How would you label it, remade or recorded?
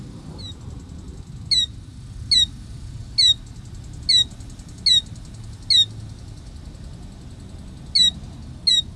recorded